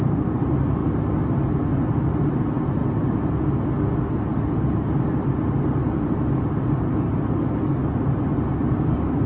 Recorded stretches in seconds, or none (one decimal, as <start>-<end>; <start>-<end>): 0.0-9.3